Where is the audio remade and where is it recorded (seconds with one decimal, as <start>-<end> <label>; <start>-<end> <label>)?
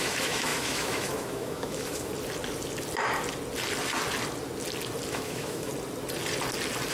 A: 0.0-2.1 remade; 2.1-5.1 recorded; 5.1-5.7 remade; 5.7-6.9 recorded